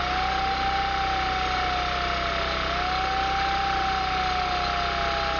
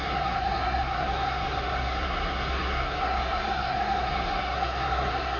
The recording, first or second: first